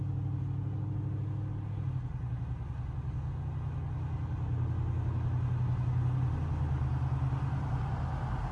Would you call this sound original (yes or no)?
yes